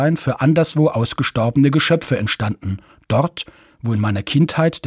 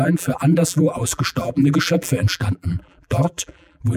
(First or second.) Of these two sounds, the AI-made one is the second